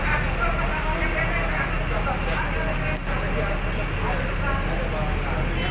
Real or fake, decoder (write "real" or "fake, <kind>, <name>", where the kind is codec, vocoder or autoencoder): real